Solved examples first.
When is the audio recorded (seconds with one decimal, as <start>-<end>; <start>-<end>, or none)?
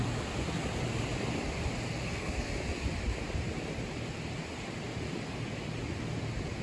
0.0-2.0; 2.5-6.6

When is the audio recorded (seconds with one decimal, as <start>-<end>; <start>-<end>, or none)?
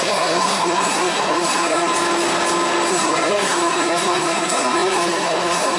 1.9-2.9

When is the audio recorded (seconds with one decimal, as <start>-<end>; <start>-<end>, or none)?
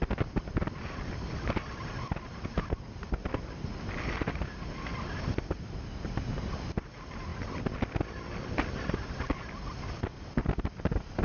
0.0-11.2